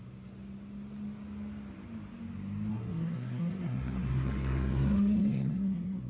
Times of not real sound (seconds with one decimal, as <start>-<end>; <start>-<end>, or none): 2.7-6.1